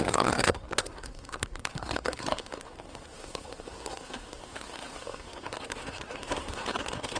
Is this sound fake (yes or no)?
yes